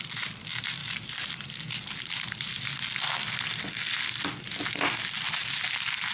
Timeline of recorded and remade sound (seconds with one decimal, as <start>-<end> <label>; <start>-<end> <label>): 0.0-6.1 recorded